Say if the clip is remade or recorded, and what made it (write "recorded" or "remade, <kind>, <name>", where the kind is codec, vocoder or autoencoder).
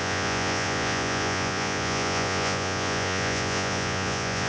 remade, vocoder, Vocos